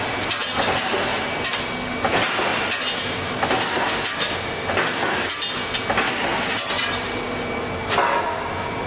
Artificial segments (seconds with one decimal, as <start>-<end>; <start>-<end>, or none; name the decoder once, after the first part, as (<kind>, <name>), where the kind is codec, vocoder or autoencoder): 1.1-1.6 (vocoder, BigVGAN v2); 2.5-4.7; 6.3-7.3